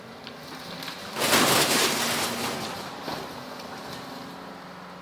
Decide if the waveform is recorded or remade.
recorded